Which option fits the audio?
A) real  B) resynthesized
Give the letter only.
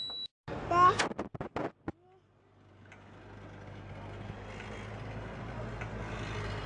A